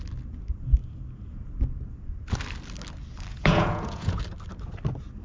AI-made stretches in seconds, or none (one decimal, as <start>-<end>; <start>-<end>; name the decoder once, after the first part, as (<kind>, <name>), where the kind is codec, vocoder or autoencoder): 3.3-4.2 (vocoder, Vocos)